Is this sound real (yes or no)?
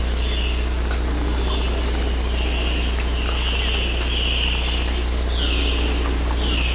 yes